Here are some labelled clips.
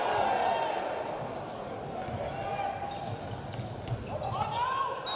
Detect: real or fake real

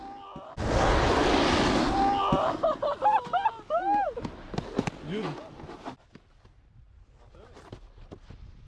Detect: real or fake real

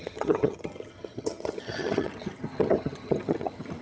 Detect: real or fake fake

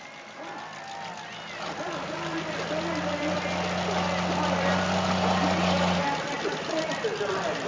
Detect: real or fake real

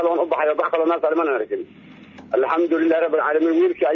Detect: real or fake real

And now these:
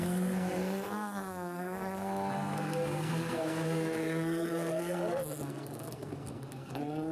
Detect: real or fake fake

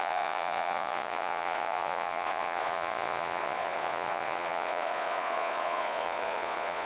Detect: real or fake fake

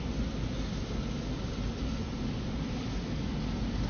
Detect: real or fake real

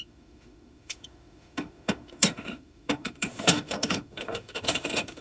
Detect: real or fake fake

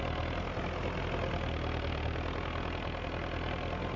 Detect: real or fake real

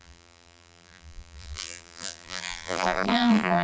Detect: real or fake fake